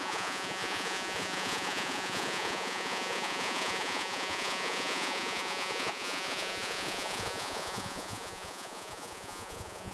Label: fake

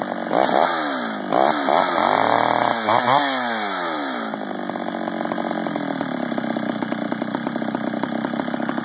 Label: real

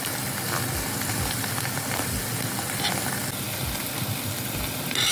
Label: real